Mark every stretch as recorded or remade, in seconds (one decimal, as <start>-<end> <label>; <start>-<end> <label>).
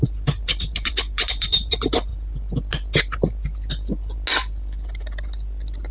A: 0.0-2.1 remade; 2.1-5.9 recorded